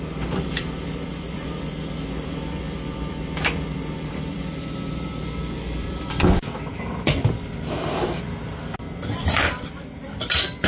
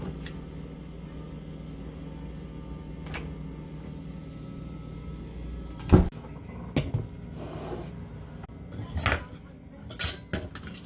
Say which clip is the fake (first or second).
first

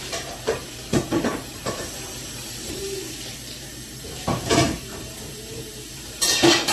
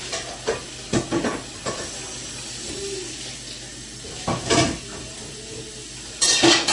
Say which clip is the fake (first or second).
first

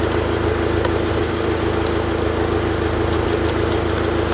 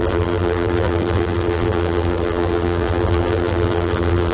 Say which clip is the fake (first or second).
second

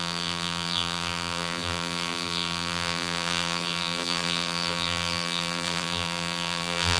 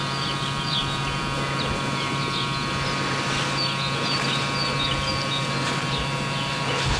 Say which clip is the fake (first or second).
first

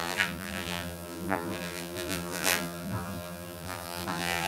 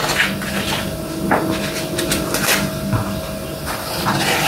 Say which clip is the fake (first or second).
first